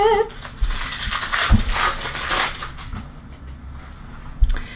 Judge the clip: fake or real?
real